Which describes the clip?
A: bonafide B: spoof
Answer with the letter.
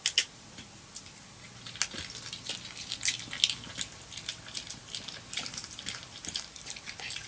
A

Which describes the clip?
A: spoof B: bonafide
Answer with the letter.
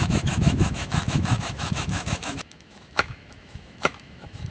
A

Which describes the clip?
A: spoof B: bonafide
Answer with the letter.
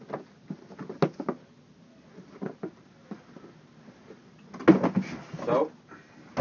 B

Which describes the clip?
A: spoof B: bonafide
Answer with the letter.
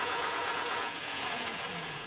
A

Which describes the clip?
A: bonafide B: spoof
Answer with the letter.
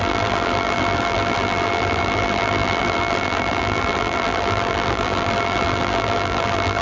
B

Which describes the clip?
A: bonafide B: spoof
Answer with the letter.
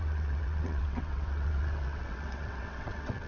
B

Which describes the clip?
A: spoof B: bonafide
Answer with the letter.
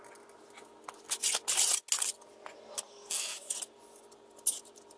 B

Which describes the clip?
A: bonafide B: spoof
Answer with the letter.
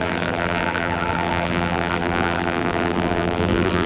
B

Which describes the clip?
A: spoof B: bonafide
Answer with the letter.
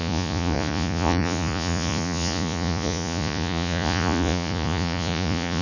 A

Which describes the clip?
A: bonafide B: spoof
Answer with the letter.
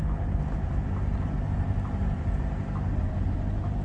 A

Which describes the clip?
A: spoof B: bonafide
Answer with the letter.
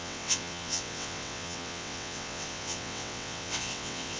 A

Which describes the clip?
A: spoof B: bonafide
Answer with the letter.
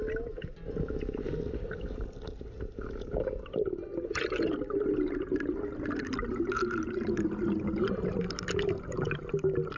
B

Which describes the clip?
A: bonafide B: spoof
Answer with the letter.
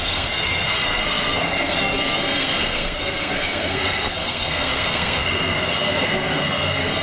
B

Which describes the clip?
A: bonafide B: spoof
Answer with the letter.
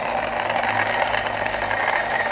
A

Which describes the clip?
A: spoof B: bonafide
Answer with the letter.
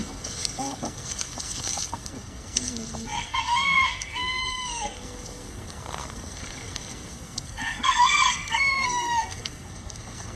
A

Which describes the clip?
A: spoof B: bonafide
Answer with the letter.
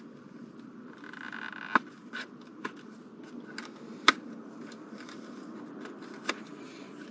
B